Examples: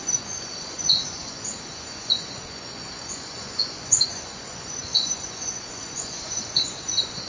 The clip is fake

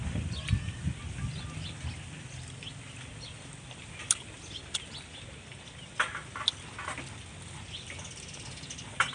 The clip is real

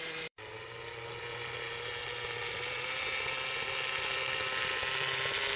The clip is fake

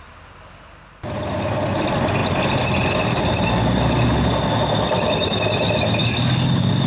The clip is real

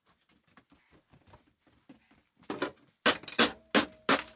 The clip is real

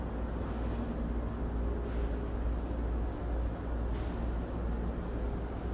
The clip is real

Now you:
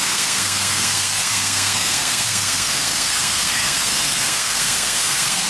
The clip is fake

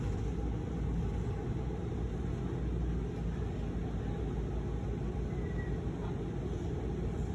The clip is real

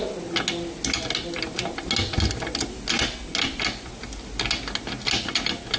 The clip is real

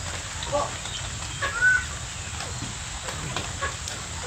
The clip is real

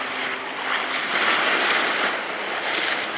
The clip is real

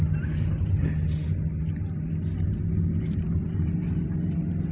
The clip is real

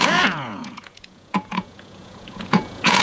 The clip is fake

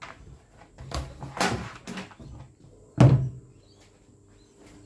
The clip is real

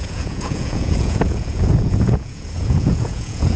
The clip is fake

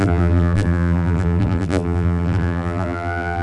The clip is fake